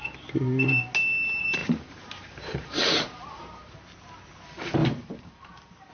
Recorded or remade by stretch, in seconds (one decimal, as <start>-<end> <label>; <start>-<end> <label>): 0.0-1.6 recorded; 1.6-3.8 remade; 3.8-4.8 recorded; 4.8-5.9 remade